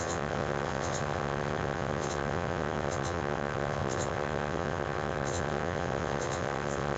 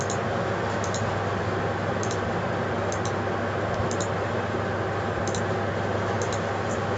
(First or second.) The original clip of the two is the second